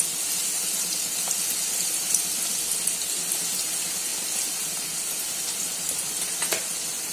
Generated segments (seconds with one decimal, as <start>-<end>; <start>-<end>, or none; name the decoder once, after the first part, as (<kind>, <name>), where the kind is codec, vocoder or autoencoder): none